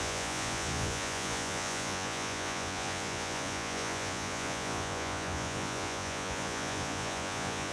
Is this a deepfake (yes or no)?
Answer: yes